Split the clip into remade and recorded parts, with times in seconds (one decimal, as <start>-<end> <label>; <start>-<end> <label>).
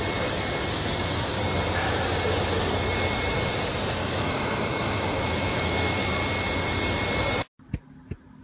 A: 0.0-4.0 recorded; 4.0-5.9 remade; 5.9-8.4 recorded